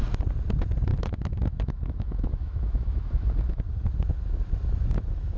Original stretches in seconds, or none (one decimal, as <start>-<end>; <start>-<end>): 0.0-0.9; 3.6-5.4